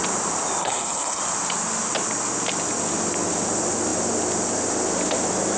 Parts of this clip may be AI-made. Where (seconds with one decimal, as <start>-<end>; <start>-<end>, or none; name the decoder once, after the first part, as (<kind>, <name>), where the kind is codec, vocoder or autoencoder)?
0.6-1.2 (codec, HILCodec)